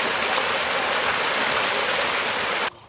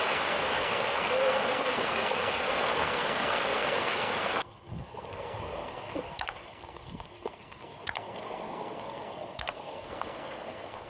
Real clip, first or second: first